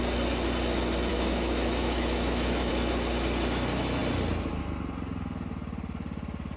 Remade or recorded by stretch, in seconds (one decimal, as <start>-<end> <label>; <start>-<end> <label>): 0.0-1.1 recorded; 1.1-2.7 remade; 2.7-6.6 recorded